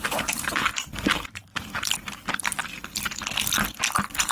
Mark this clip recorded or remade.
remade